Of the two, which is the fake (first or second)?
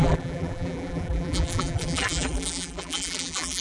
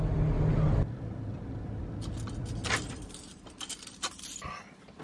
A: first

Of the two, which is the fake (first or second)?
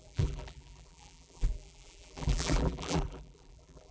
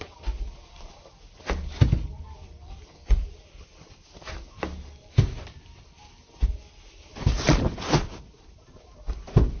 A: first